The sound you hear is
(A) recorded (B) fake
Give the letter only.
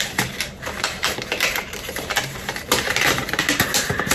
B